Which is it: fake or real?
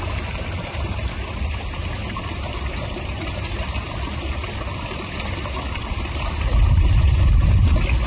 real